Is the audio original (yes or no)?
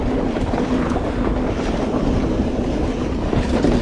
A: yes